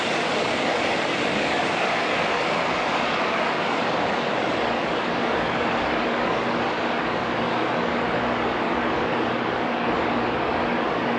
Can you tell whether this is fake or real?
fake